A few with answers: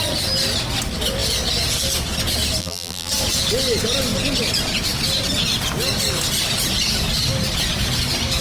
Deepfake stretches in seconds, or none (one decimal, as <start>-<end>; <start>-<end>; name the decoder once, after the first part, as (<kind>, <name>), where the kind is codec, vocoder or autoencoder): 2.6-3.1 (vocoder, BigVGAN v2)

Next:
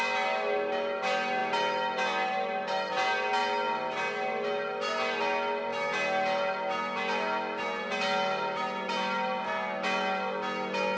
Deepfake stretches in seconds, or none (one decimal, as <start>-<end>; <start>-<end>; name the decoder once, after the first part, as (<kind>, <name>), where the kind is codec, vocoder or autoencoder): none

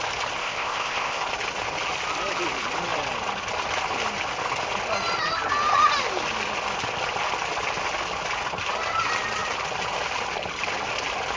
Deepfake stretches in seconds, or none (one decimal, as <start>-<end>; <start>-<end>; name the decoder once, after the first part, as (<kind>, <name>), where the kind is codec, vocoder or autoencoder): 0.4-1.2 (codec, ZipCodec)

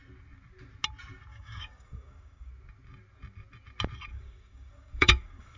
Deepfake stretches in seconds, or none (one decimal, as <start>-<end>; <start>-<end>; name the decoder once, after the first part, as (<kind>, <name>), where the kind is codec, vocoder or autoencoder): 1.3-2.5 (codec, DAC); 4.1-5.6